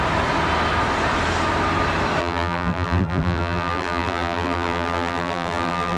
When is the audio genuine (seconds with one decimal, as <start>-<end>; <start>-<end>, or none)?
0.0-2.2